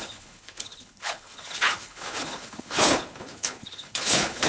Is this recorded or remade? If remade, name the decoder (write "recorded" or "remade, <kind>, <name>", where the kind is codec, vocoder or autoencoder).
remade, codec, HILCodec